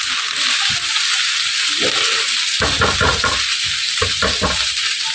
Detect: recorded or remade recorded